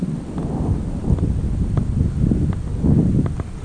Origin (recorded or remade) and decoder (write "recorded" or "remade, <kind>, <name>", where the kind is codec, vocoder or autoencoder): recorded